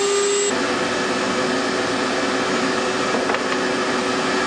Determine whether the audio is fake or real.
real